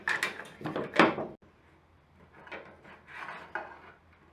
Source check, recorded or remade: recorded